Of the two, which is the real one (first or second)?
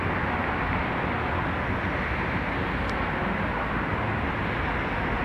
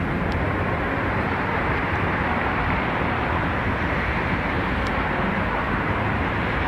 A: first